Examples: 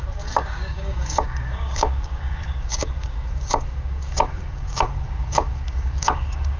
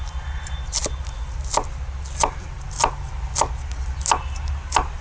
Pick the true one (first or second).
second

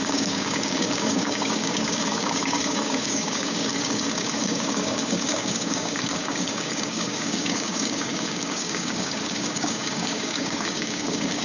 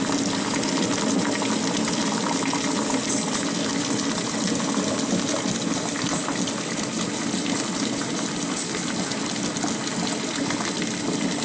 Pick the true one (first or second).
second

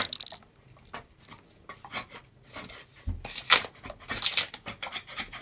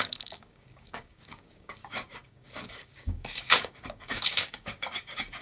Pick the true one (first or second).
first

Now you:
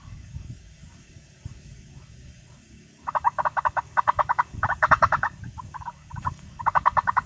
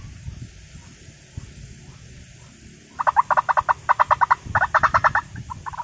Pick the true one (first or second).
second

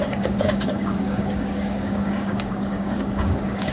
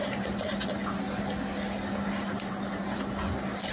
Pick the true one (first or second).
second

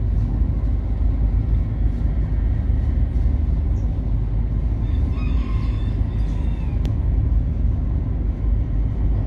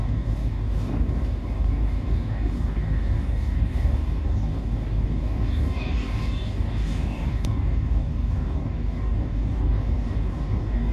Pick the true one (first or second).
first